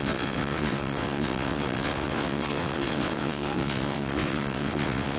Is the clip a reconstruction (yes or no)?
yes